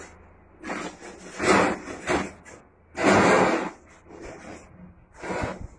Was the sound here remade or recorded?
recorded